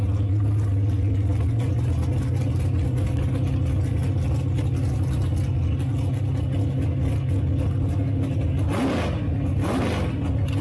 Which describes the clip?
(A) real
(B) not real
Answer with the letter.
A